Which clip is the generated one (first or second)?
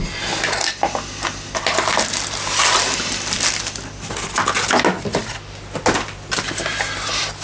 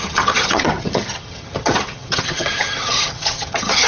second